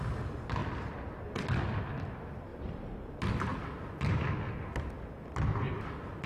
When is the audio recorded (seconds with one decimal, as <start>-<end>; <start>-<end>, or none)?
0.0-2.5; 3.1-6.3